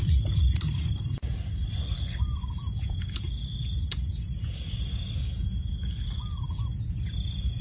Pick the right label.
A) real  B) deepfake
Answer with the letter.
A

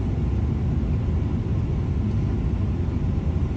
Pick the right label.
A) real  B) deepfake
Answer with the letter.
A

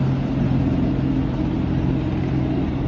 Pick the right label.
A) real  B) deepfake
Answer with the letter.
A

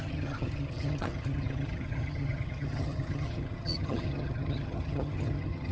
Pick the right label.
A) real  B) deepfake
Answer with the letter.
B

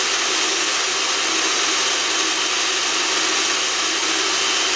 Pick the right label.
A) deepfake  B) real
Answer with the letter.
B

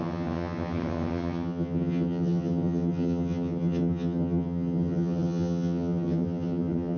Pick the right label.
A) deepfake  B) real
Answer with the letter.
A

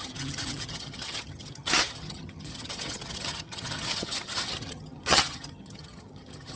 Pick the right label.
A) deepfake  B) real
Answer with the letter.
A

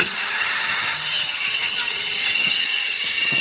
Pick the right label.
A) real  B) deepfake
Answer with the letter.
B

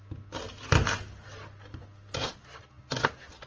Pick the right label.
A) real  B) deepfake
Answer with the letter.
A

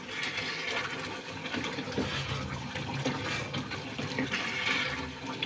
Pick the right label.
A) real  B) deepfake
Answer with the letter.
A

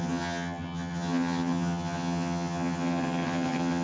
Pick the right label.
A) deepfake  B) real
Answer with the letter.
A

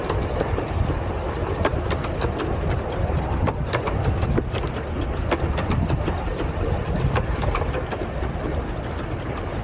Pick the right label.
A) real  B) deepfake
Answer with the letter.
A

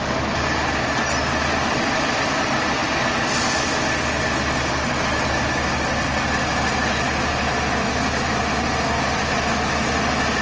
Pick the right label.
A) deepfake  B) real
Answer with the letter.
B